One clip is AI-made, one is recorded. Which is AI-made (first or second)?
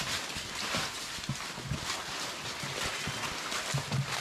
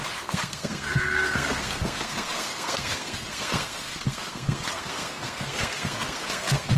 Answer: second